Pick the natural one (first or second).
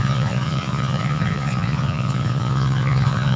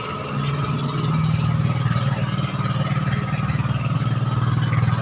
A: second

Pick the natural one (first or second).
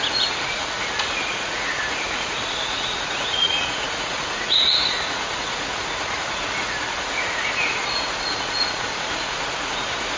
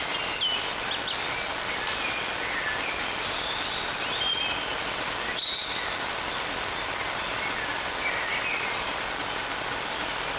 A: second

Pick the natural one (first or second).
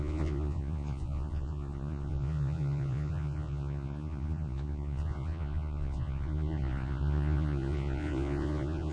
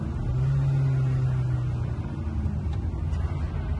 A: second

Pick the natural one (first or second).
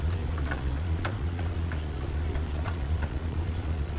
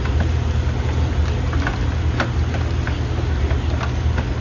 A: second